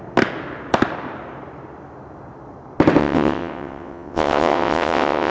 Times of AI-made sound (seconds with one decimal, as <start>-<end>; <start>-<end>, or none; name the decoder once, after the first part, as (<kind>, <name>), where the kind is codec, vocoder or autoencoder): 3.0-5.3 (vocoder, WaveNeXt)